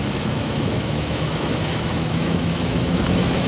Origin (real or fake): fake